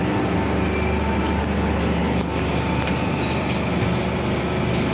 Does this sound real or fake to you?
real